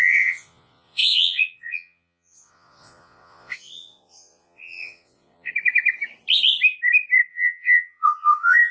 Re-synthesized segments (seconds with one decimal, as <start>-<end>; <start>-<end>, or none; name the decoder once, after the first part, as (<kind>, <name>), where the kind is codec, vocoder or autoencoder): 0.0-5.5 (vocoder, Vocos); 7.3-8.7